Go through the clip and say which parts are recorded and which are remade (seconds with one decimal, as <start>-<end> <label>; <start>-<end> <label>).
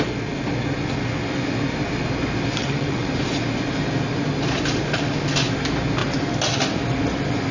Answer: 0.0-2.5 recorded; 2.5-3.1 remade; 3.1-7.5 recorded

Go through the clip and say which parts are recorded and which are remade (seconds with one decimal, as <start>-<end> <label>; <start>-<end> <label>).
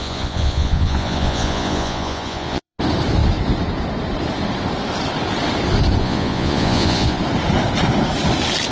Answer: 0.0-2.8 remade; 2.8-6.0 recorded; 6.0-7.2 remade; 7.2-8.7 recorded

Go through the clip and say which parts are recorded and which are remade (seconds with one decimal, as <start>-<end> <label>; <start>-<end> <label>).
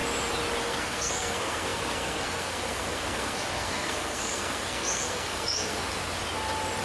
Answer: 0.0-0.6 recorded; 0.6-5.8 remade; 5.8-6.8 recorded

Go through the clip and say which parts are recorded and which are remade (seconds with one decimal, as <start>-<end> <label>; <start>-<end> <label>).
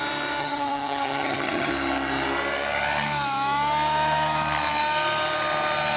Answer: 0.0-0.4 recorded; 0.4-1.7 remade; 1.7-6.0 recorded